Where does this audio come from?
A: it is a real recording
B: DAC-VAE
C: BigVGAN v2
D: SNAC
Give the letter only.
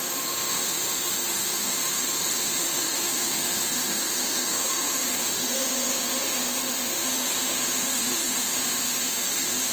B